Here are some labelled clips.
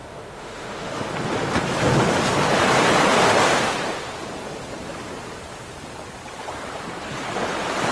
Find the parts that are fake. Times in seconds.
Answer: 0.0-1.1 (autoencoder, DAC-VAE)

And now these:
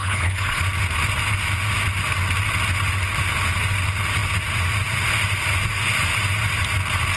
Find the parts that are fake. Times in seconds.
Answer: 0.0-0.6 (codec, HILCodec)

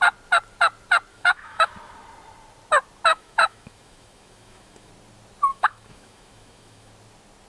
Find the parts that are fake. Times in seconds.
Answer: 1.1-1.7 (autoencoder, DAC-VAE); 3.1-4.9; 5.5-6.9

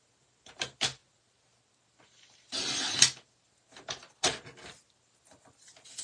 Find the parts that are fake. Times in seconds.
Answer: none

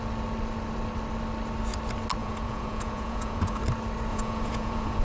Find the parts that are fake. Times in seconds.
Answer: 2.2-3.6 (vocoder, Vocos); 4.1-5.0

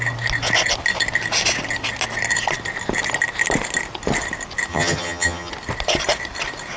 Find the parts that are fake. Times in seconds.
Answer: 4.7-5.5 (vocoder, HiFi-GAN)

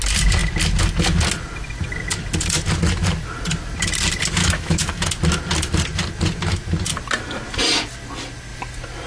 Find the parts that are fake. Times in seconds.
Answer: 4.4-5.1 (autoencoder, DAC-VAE)

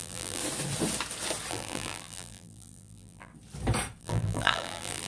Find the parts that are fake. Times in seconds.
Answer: 0.0-0.4 (vocoder, BigVGAN v2); 1.5-3.3; 4.0-5.1